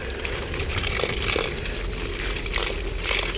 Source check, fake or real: real